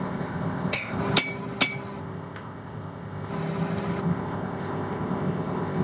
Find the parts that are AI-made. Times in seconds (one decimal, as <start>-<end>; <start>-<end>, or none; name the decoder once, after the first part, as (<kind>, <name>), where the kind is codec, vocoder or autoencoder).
0.0-1.0 (codec, ZipCodec); 2.0-3.3; 4.0-5.8